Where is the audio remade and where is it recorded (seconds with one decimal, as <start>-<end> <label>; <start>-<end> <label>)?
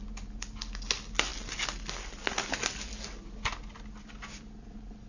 0.0-5.1 recorded